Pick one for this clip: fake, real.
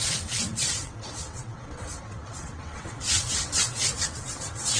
fake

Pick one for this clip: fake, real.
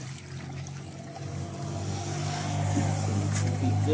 real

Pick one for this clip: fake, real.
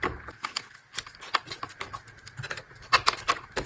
real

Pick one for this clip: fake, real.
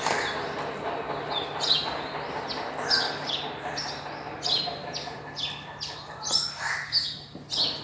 real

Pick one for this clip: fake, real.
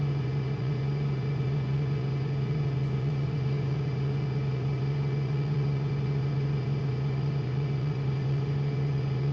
fake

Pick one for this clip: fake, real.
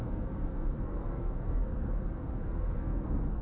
fake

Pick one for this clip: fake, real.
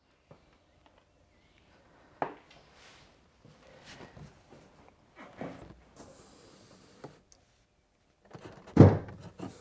real